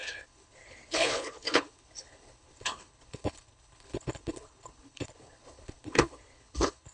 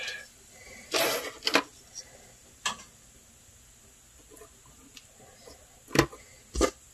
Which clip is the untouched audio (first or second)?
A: second